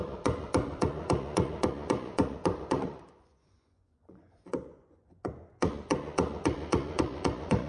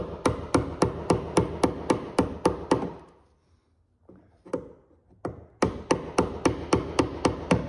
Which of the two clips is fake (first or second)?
first